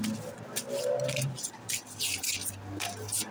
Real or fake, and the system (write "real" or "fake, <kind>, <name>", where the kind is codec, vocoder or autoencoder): real